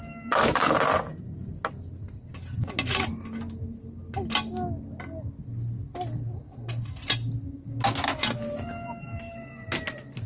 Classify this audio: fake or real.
real